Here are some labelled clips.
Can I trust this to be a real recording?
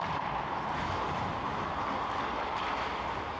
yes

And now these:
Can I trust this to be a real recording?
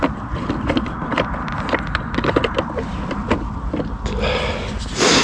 yes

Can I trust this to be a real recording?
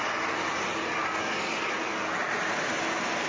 yes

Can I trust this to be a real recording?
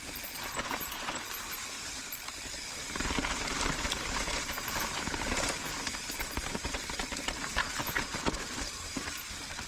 no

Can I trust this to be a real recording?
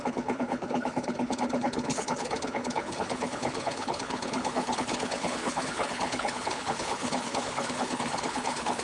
no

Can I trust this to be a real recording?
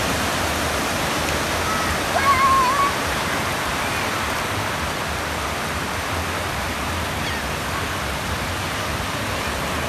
yes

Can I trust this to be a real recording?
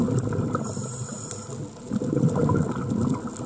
yes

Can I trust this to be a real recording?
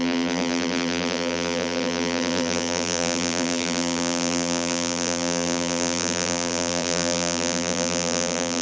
no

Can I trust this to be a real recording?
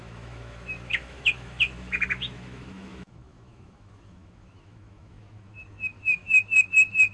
no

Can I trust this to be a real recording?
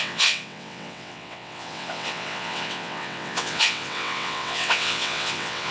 no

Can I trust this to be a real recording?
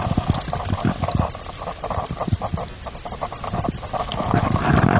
yes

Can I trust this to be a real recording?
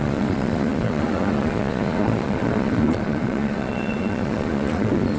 no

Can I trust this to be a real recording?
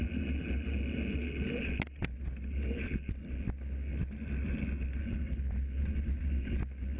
yes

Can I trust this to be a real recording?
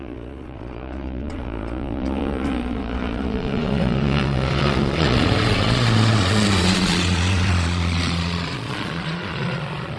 no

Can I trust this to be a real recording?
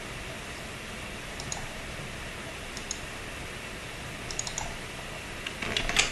yes